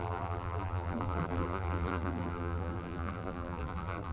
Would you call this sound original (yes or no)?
no